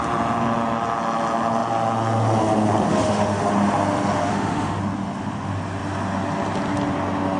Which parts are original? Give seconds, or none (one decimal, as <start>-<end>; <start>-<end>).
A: 0.0-2.9; 3.5-4.3; 4.8-7.4